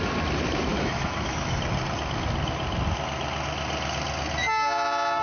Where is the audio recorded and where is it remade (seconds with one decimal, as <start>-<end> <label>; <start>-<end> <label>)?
0.0-0.7 recorded; 0.7-1.6 remade; 1.6-5.2 recorded